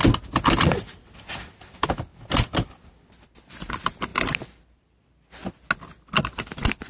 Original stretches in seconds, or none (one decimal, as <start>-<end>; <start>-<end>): 0.0-6.9